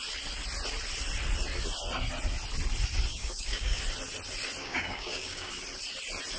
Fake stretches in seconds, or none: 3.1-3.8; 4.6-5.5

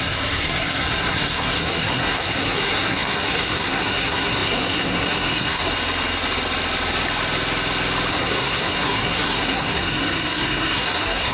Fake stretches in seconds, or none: 0.0-5.7; 8.1-11.3

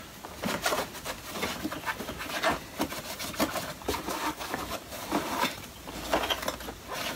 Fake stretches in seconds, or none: 4.2-4.8

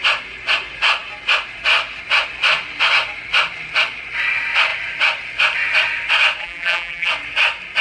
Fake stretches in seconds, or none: 6.4-7.1

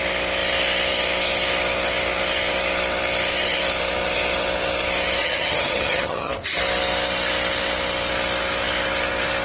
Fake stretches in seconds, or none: 5.2-6.3